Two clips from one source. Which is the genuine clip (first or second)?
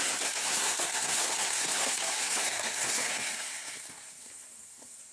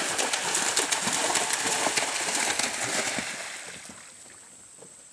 second